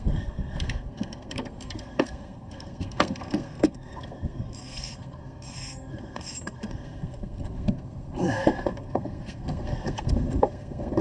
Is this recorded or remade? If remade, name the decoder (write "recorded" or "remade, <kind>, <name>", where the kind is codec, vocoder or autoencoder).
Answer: remade, codec, SNAC